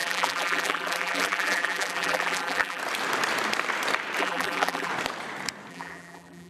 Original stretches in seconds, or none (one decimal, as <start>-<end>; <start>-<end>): 2.8-4.2; 4.9-5.7